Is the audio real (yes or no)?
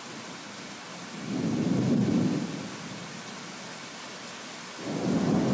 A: yes